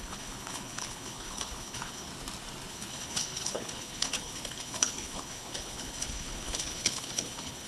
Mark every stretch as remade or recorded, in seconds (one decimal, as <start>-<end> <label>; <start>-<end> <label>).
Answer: 0.0-2.1 remade; 2.1-2.7 recorded; 2.7-7.7 remade